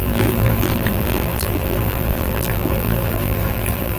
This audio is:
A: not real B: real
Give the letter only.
A